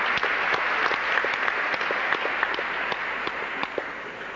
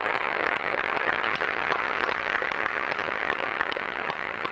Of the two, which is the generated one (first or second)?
second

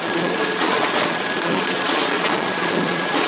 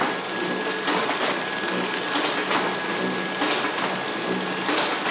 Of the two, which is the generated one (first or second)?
first